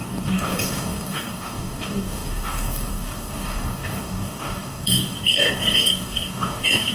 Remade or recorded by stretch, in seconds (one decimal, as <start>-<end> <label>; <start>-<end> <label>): 0.0-6.9 remade